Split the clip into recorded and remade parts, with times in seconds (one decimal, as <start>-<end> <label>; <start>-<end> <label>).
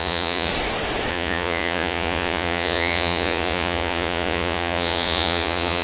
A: 0.0-0.5 remade; 0.5-1.1 recorded; 1.1-5.8 remade